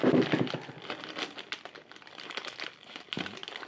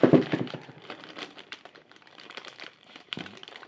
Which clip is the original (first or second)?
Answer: first